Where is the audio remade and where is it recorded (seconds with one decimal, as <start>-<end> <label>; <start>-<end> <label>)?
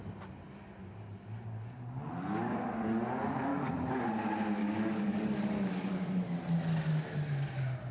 0.0-3.5 recorded; 3.5-4.0 remade; 4.0-4.6 recorded; 4.6-6.0 remade; 6.0-7.9 recorded